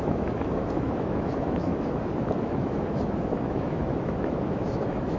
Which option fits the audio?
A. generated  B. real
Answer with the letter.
A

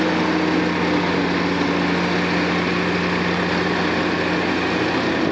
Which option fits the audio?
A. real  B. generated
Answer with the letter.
A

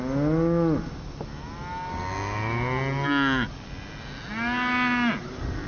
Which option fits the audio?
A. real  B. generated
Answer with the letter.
A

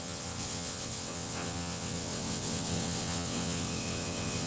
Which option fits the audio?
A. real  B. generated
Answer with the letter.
B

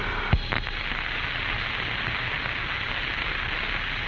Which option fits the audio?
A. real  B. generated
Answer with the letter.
A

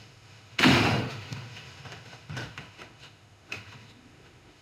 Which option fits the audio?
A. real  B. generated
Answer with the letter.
B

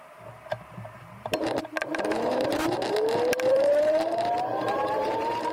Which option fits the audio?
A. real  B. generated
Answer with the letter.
B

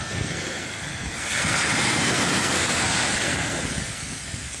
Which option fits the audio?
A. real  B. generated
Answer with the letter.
B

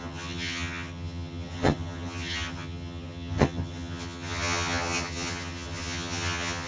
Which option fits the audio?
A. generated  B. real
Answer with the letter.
A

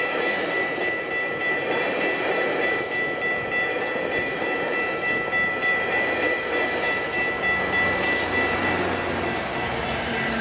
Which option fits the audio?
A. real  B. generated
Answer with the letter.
A